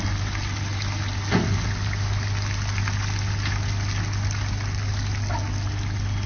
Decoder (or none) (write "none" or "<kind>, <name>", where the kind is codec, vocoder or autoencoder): none